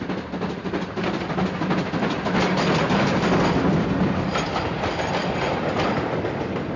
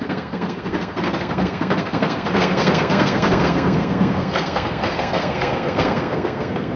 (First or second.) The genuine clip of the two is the first